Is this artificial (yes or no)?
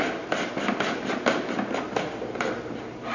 no